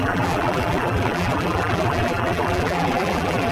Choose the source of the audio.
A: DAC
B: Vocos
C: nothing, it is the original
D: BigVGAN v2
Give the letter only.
D